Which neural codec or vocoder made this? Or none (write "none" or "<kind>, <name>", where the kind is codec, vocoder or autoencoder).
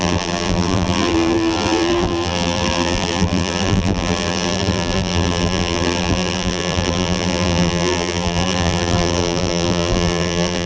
vocoder, BigVGAN v2